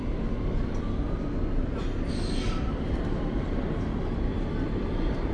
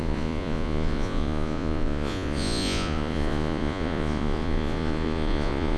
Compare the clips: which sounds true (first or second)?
first